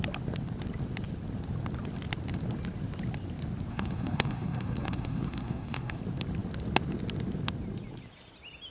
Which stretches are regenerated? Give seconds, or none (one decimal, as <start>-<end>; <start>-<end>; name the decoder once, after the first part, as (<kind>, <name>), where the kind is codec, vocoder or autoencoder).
3.7-6.0 (codec, SNAC)